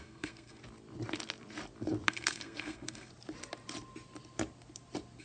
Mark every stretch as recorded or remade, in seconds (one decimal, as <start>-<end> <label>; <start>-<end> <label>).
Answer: 0.0-0.6 remade; 0.6-2.1 recorded; 2.1-3.1 remade; 3.1-5.2 recorded